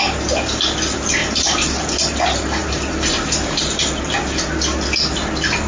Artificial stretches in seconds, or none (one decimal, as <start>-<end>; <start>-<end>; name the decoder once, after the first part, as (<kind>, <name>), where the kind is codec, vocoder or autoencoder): 1.2-1.9 (vocoder, BigVGAN v2); 2.6-3.6